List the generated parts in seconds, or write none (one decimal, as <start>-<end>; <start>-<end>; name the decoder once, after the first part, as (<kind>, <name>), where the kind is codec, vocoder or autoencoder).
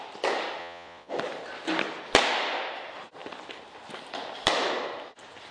0.6-1.1 (vocoder, Vocos)